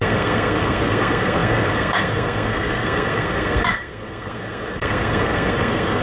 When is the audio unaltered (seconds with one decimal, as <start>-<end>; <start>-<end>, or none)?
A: none